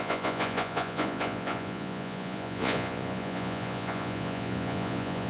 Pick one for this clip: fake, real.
fake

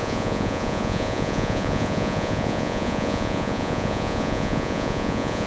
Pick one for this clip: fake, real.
fake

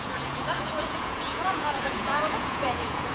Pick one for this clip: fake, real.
fake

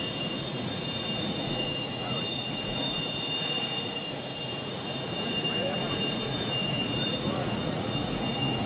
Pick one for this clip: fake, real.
fake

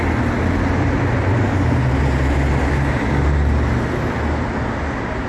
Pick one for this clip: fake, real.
real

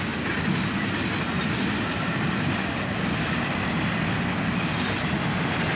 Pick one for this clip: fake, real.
real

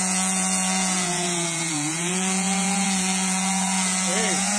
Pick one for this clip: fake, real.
fake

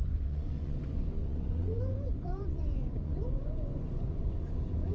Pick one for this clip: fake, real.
fake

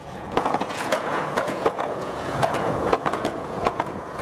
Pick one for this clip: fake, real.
fake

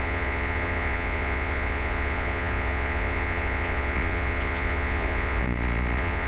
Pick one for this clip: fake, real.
fake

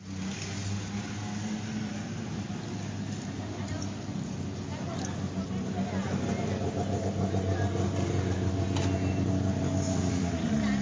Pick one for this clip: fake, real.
real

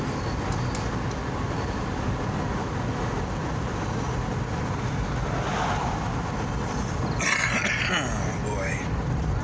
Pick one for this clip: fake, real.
real